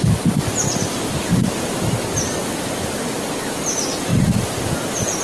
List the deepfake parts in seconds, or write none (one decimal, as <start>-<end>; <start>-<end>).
1.3-1.9; 4.1-4.7